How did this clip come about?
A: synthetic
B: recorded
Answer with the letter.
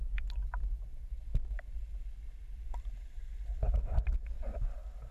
B